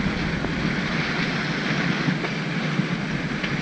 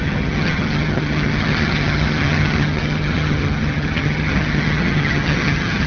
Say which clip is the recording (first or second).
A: first